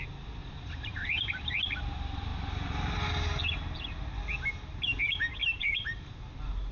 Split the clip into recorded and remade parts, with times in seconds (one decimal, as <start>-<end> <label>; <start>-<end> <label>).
0.0-0.4 recorded; 0.4-1.6 remade; 1.6-5.4 recorded; 5.4-6.1 remade; 6.1-6.7 recorded